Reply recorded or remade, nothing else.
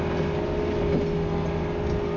recorded